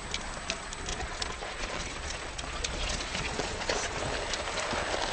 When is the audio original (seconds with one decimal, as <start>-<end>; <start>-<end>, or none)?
0.0-0.9; 4.0-5.1

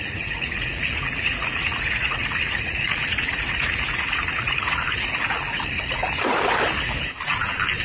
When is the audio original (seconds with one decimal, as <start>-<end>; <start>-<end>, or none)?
6.0-7.8